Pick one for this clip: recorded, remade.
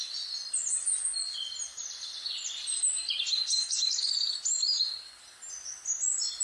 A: recorded